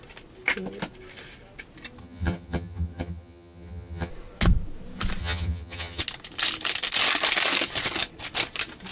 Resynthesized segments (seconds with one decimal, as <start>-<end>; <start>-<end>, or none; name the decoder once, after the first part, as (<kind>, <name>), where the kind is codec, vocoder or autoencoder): 2.0-4.1 (vocoder, HiFi-GAN); 5.2-6.0